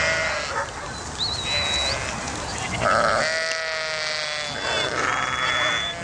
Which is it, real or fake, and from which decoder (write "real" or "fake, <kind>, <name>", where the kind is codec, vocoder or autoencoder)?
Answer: real